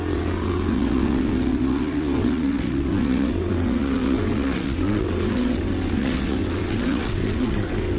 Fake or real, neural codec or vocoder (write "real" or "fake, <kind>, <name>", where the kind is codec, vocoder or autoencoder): fake, vocoder, WaveNeXt